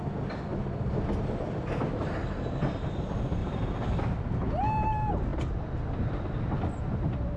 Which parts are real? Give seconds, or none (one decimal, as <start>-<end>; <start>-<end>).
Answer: 0.0-3.4; 4.0-7.4